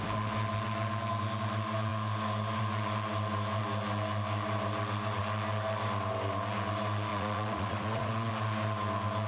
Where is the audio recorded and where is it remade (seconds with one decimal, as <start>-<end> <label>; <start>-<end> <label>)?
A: 0.0-7.1 recorded; 7.1-8.3 remade; 8.3-9.3 recorded